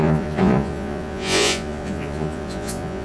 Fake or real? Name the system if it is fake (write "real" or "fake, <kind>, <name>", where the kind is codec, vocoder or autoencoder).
fake, vocoder, Vocos